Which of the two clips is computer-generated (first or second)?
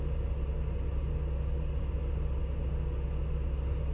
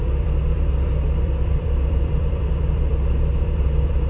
second